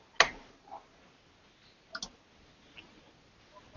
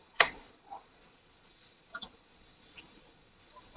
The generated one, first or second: second